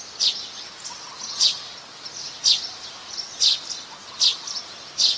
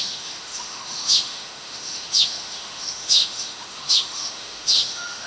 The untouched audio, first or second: first